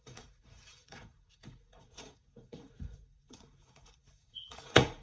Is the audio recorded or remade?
remade